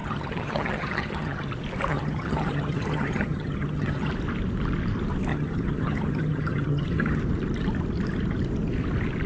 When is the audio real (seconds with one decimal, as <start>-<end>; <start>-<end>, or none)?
1.5-1.9; 4.1-5.3; 7.2-9.3

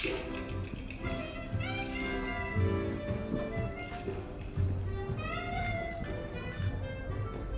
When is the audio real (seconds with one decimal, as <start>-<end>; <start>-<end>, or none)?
0.0-7.6

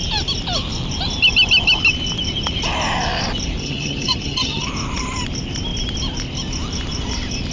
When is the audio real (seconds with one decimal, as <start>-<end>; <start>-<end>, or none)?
0.0-3.6; 4.7-7.5